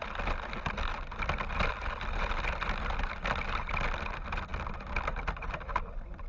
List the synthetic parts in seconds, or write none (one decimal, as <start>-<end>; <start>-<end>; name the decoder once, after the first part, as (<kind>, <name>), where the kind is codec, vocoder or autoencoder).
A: 0.6-6.3 (vocoder, BigVGAN v2)